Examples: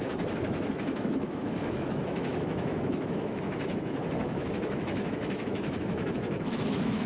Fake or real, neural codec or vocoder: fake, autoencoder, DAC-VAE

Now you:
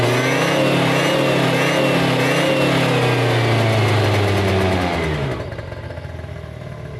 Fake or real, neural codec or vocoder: real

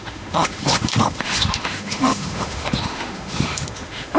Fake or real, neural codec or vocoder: fake, autoencoder, DAC-VAE